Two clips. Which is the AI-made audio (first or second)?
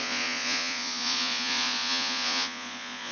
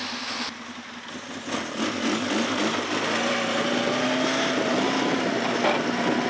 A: first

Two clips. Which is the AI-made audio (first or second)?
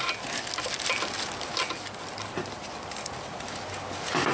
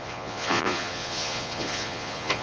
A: second